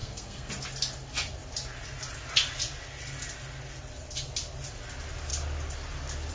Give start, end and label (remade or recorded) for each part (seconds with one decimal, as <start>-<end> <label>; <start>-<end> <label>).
0.0-0.5 remade; 0.5-6.3 recorded